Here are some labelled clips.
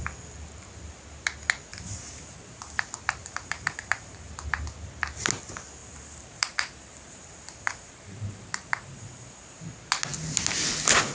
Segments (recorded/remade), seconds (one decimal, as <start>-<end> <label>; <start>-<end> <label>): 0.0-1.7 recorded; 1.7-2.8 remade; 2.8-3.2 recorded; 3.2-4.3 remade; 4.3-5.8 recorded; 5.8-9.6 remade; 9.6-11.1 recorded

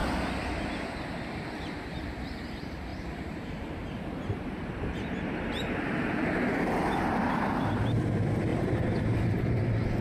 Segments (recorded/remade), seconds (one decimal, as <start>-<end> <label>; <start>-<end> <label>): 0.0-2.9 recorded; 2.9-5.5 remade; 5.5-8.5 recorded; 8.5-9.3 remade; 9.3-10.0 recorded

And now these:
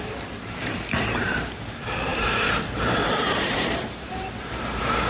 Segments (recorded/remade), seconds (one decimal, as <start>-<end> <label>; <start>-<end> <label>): 0.0-5.1 remade

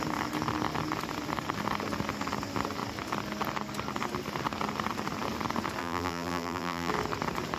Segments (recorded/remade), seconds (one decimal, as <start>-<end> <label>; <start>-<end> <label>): 0.0-5.8 recorded; 5.8-6.9 remade; 6.9-7.6 recorded